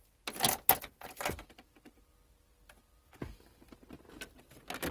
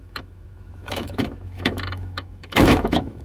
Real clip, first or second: first